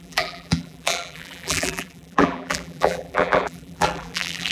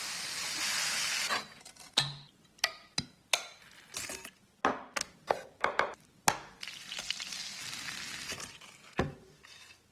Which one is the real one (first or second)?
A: second